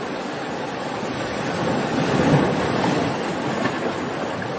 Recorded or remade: recorded